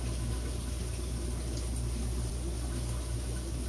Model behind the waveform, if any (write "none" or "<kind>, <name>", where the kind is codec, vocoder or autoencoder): none